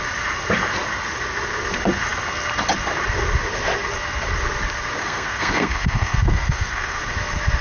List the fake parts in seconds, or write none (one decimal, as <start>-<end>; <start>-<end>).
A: 5.0-7.0